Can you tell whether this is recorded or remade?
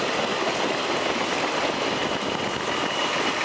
recorded